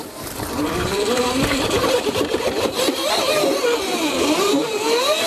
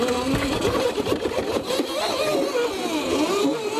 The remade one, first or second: first